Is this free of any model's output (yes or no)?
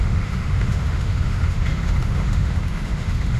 no